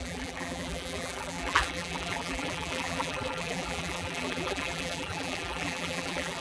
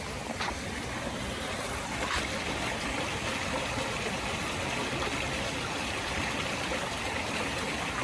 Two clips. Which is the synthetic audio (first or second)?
first